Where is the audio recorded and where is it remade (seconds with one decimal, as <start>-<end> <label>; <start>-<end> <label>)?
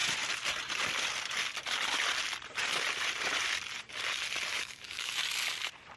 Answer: 0.0-4.5 recorded; 4.5-5.1 remade; 5.1-6.0 recorded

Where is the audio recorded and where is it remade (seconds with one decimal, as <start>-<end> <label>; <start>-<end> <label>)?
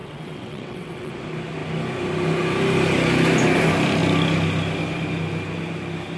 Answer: 0.0-1.1 remade; 1.1-6.2 recorded